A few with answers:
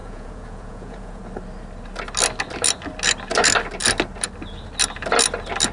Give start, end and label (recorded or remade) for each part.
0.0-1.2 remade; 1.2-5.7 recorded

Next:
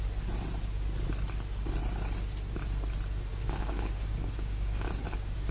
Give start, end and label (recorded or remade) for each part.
0.0-3.3 recorded; 3.3-4.9 remade; 4.9-5.5 recorded

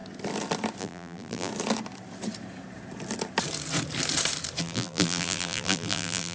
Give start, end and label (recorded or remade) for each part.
0.0-0.8 recorded; 0.8-1.5 remade; 1.5-4.6 recorded; 4.6-6.3 remade